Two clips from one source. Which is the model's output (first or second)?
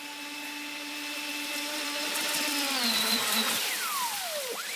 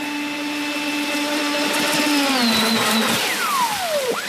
first